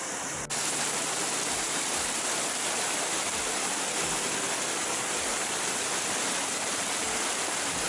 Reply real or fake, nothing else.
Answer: real